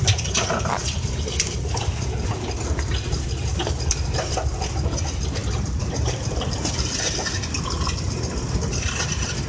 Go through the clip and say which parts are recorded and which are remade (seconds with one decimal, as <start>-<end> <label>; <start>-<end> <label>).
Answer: 0.0-5.4 recorded; 5.4-7.1 remade; 7.1-9.5 recorded